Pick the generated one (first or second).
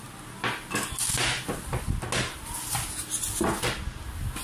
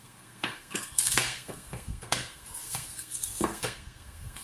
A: second